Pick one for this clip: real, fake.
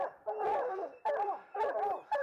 fake